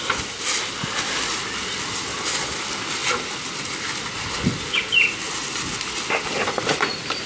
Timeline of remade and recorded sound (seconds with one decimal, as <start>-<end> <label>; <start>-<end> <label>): 0.0-7.3 recorded